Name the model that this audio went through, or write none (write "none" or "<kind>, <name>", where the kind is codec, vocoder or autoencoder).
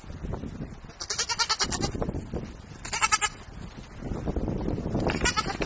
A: none